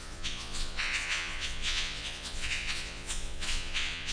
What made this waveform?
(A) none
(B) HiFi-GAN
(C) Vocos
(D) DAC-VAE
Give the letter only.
C